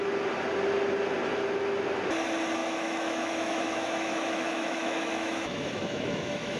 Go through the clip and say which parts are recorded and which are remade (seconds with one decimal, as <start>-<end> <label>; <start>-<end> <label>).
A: 0.0-2.6 recorded; 2.6-6.6 remade